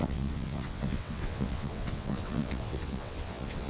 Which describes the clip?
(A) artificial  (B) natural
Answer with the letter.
A